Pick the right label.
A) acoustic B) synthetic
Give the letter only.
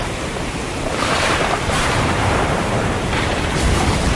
B